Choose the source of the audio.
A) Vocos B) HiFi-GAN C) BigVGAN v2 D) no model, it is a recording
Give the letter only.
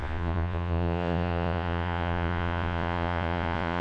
A